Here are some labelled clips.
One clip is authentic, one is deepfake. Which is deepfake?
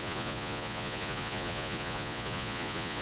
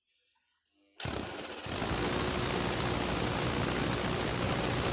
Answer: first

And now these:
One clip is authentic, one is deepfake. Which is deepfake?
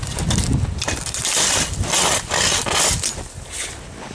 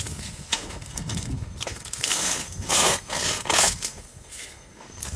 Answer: second